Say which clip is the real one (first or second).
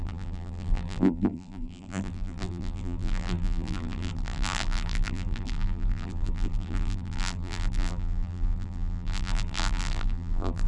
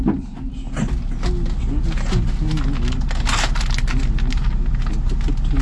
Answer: second